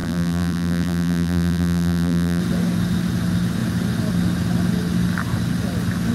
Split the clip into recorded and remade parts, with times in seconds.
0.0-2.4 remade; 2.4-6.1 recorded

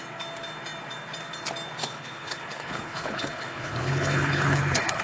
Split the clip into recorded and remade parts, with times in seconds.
0.0-1.8 recorded; 1.8-5.0 remade

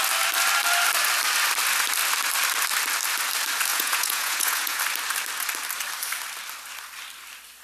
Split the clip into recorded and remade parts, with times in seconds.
0.0-3.7 recorded; 3.7-4.8 remade; 4.8-7.6 recorded

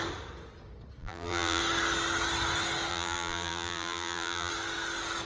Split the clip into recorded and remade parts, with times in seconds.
0.0-1.0 recorded; 1.0-1.6 remade; 1.6-2.9 recorded; 2.9-4.5 remade; 4.5-5.2 recorded

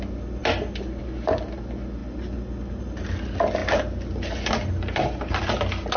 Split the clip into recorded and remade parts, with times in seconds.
0.0-6.0 recorded

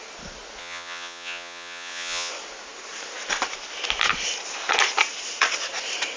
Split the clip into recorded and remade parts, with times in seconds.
0.0-0.6 recorded; 0.6-2.3 remade; 2.3-6.2 recorded

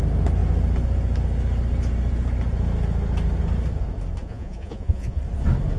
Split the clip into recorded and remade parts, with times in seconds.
0.0-4.2 recorded; 4.2-5.2 remade; 5.2-5.8 recorded